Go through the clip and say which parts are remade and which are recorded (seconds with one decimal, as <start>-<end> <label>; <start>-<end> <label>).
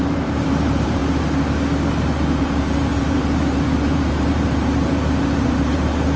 0.0-1.0 remade; 1.0-2.4 recorded; 2.4-6.2 remade